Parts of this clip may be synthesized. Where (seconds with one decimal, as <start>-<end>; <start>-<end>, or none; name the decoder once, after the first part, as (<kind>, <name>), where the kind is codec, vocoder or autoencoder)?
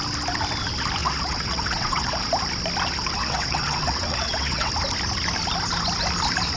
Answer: 1.0-2.2 (vocoder, WaveNeXt); 3.2-4.7